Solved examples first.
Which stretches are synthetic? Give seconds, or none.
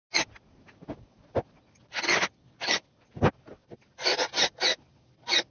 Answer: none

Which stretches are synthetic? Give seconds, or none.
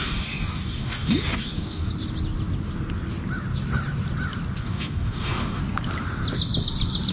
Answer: 0.0-1.9 (codec, DAC); 4.6-5.6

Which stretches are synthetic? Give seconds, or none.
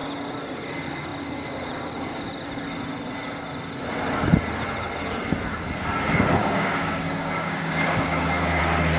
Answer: 6.4-8.6 (codec, DAC)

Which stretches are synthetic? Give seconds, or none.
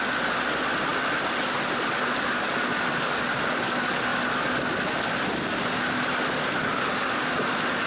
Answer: none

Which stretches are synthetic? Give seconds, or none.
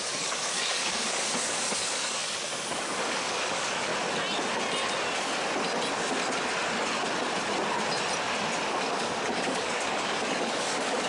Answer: 0.0-3.9 (codec, DAC); 8.7-11.1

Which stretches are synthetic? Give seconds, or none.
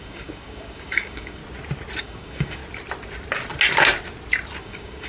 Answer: 0.0-1.4 (codec, DAC); 2.0-2.6; 4.6-5.1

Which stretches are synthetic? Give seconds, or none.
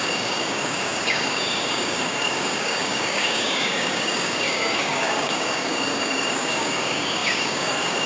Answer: 0.0-8.1 (codec, DAC)